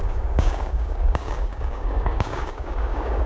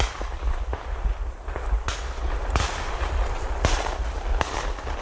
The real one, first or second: second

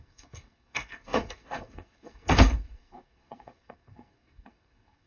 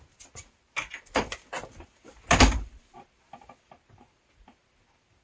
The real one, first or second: second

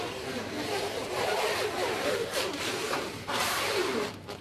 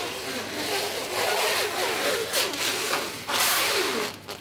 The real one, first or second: second